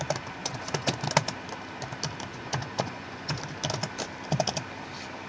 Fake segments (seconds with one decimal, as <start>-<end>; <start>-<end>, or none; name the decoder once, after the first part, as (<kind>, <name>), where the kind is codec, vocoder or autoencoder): 0.4-1.0 (vocoder, Vocos); 2.3-3.4